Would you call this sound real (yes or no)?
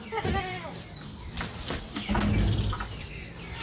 yes